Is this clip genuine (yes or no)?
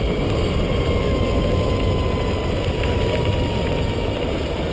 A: yes